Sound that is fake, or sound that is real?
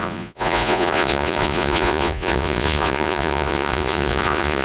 fake